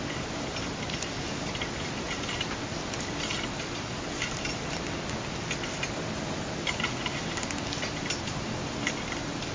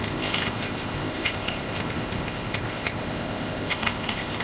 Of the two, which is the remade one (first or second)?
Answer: second